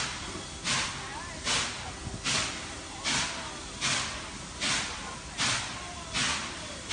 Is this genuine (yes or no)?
yes